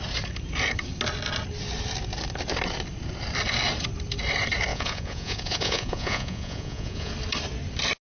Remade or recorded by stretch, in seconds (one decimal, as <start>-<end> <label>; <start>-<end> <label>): 0.0-4.7 recorded; 4.7-7.1 remade; 7.1-8.1 recorded